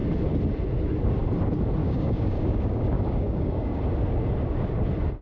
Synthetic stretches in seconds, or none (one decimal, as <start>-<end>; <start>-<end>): 1.8-3.8